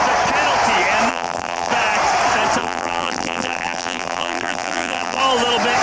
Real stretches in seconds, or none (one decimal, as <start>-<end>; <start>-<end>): 0.0-1.1; 1.7-2.6; 5.2-5.8

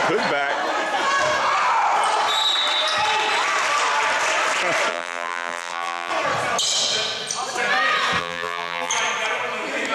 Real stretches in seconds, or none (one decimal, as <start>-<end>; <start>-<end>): 0.0-4.9; 6.1-8.2; 8.9-9.9